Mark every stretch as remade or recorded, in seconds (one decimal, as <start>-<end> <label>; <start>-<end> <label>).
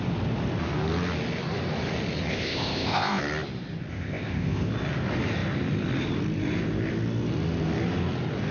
0.0-2.3 recorded; 2.3-3.2 remade; 3.2-3.9 recorded; 3.9-4.7 remade; 4.7-8.5 recorded